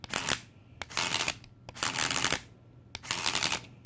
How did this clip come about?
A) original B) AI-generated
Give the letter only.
A